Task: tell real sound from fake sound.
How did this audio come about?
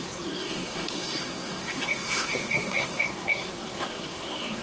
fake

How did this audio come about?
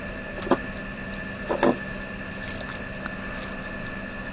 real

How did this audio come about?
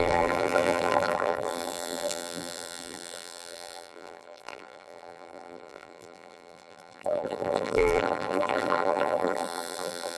fake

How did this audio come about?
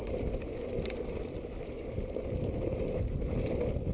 real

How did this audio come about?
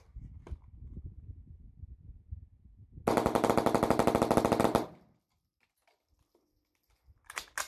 real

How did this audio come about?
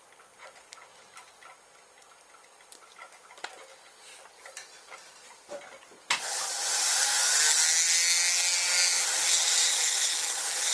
real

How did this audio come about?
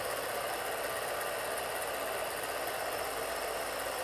real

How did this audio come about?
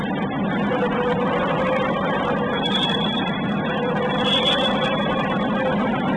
real